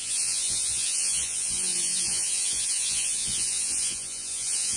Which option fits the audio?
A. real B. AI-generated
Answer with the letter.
B